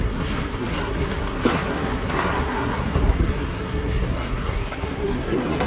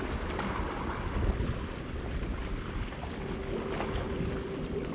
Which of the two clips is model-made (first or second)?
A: first